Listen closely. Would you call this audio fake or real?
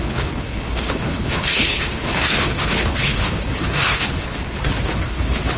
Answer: fake